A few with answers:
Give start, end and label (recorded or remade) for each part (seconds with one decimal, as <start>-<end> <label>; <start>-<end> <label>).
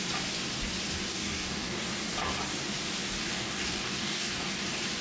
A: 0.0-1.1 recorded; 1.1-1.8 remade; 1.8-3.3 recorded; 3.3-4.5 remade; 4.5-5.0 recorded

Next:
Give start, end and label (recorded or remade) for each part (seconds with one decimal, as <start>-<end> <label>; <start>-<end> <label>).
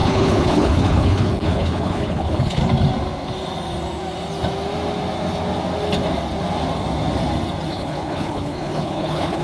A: 0.0-2.6 remade; 2.6-7.7 recorded; 7.7-9.4 remade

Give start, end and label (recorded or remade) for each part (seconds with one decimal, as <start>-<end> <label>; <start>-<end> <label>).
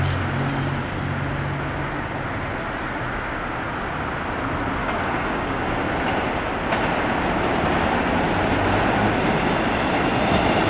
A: 0.0-4.8 recorded; 4.8-5.7 remade; 5.7-10.7 recorded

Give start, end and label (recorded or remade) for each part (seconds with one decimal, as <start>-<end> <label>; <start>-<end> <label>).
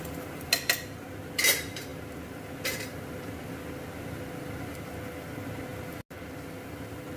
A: 0.0-7.2 recorded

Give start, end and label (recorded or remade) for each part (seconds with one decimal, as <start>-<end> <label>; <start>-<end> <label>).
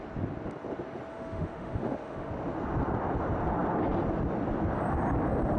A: 0.0-1.1 recorded; 1.1-2.3 remade; 2.3-5.6 recorded